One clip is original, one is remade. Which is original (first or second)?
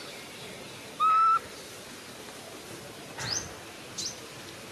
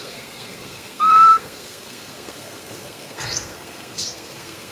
first